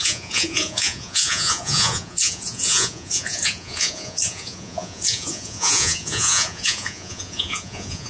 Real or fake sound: fake